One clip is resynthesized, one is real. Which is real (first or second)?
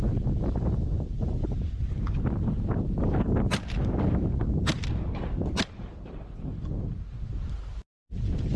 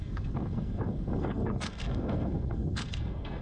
first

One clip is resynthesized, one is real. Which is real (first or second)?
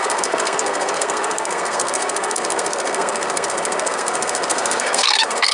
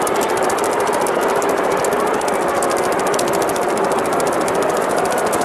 second